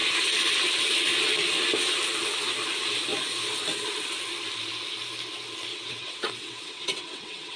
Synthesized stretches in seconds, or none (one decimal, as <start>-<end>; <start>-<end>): 5.7-7.6